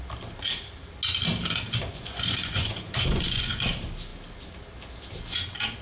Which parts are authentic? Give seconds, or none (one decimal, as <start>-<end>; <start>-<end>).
0.0-1.9; 3.6-5.8